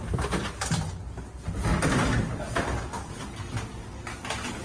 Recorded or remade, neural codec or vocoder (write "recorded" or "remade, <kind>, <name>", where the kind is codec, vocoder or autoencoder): recorded